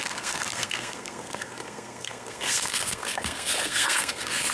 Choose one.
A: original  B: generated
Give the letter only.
B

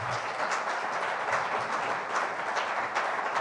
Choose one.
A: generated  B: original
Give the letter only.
B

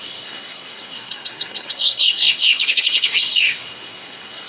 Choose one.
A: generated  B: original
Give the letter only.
A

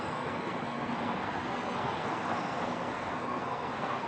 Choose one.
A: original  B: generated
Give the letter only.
B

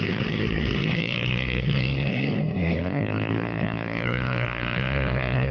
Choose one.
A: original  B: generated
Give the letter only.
B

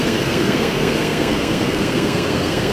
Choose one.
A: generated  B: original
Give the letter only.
A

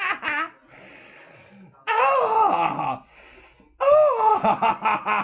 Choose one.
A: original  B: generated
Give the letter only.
A